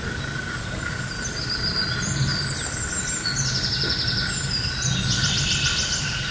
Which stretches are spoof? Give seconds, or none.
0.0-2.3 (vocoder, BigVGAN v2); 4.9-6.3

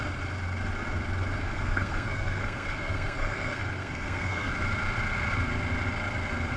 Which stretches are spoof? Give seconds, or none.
1.4-4.5 (codec, SNAC)

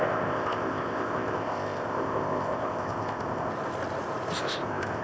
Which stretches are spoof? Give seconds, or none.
0.0-3.5 (codec, ZipCodec); 4.4-5.0

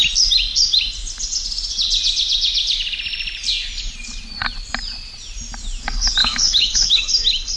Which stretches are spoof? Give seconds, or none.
6.2-7.0 (autoencoder, DAC-VAE)

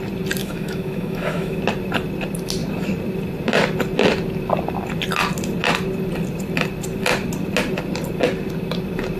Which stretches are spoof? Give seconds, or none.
0.4-1.6 (autoencoder, DAC-VAE)

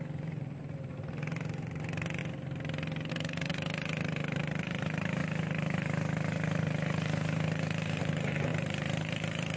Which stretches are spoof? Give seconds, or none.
0.0-2.2 (vocoder, BigVGAN v2); 3.1-9.6

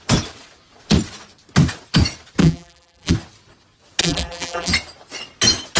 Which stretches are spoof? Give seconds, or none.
2.4-3.1 (vocoder, BigVGAN v2); 4.0-4.7

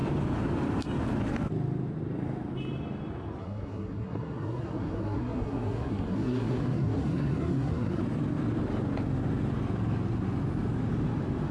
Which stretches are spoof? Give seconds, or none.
3.4-8.0 (codec, SNAC)